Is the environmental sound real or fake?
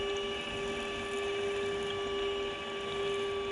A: real